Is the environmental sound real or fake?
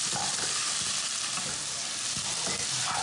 real